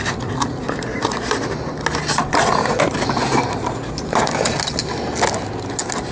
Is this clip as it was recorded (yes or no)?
yes